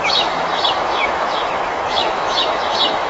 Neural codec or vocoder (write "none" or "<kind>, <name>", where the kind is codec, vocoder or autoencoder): autoencoder, DAC-VAE